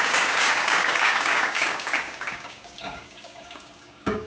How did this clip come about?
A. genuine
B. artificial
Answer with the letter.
B